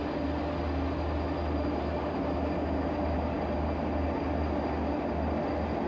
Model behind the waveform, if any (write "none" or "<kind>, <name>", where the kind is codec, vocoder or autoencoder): none